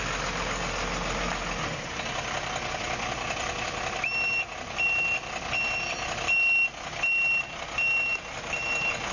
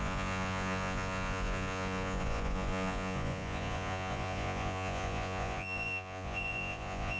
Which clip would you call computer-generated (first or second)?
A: second